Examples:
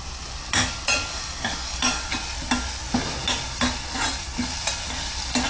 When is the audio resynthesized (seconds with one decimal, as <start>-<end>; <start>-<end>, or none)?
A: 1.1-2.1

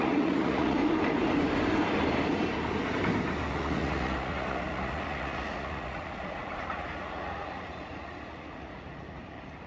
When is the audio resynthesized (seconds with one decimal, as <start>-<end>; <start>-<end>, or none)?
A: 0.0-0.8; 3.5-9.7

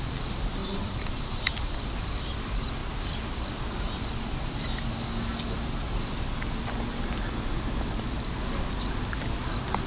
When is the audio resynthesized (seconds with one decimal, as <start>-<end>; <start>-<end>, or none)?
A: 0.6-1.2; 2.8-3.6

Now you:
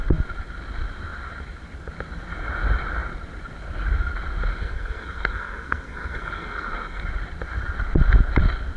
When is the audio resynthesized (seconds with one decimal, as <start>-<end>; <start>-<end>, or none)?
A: 4.5-7.0

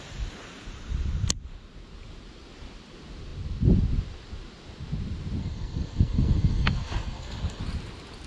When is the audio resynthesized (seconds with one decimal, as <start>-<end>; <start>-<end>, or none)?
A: 5.4-7.6

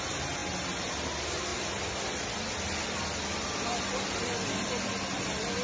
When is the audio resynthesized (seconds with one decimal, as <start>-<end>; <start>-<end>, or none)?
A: none

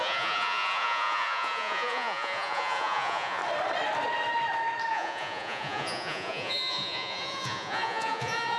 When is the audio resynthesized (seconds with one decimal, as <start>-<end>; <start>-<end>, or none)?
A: 0.0-3.4; 4.9-8.6

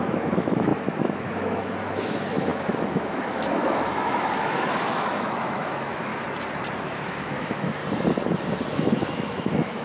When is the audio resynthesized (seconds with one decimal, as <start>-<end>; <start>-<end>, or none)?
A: 0.0-6.1; 6.8-7.8; 8.7-9.8